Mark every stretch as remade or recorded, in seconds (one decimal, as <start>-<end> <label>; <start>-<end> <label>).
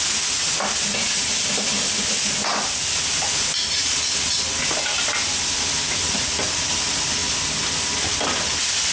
0.0-8.9 recorded